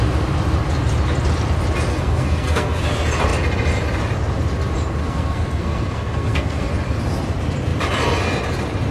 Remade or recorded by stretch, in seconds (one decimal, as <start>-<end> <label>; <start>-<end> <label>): 0.0-1.9 recorded; 1.9-2.8 remade; 2.8-5.0 recorded; 5.0-6.7 remade; 6.7-8.9 recorded